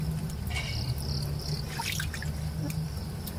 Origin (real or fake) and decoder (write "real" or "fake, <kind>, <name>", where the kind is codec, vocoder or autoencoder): real